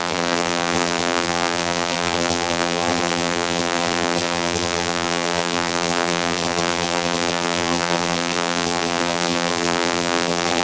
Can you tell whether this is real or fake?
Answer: fake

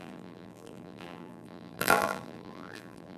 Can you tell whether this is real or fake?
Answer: fake